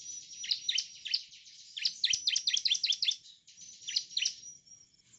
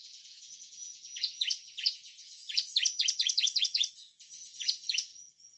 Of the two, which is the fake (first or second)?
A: second